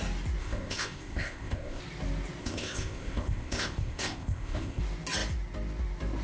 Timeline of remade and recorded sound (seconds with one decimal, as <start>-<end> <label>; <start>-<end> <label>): 0.0-0.4 recorded; 0.4-1.8 remade; 1.8-2.4 recorded; 2.4-4.8 remade; 4.8-6.2 recorded

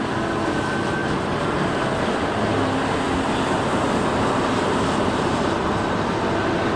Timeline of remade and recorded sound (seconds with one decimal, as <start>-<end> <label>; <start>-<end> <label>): 0.0-6.8 recorded

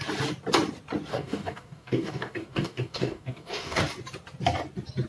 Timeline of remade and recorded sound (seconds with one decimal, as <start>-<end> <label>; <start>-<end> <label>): 0.0-1.1 recorded; 1.1-3.8 remade; 3.8-5.1 recorded

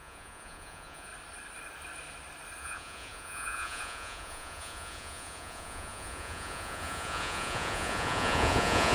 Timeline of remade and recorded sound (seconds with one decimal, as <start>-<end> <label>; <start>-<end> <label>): 0.0-1.1 remade; 1.1-2.6 recorded; 2.6-8.9 remade

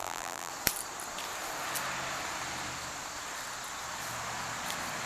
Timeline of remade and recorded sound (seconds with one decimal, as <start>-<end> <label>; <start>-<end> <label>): 0.0-0.5 remade; 0.5-5.1 recorded

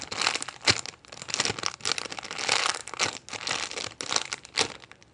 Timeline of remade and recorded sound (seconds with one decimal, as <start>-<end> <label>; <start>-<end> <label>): 0.0-5.1 recorded

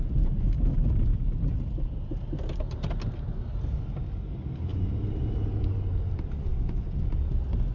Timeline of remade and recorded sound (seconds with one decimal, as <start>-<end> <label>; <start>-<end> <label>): 0.0-6.5 recorded; 6.5-7.0 remade; 7.0-7.7 recorded

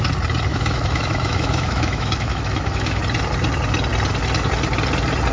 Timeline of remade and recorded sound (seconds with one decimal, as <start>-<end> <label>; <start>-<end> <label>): 0.0-0.5 recorded; 0.5-3.0 remade; 3.0-5.3 recorded